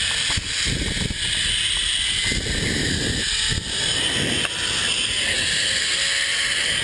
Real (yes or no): yes